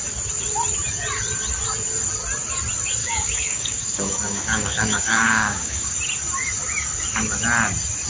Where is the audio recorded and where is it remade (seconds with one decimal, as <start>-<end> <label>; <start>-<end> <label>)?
0.0-3.0 recorded; 3.0-5.9 remade; 5.9-8.1 recorded